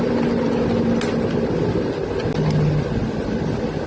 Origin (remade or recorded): recorded